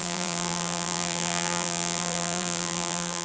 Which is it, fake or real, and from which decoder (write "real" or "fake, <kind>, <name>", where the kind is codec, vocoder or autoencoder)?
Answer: fake, vocoder, BigVGAN v2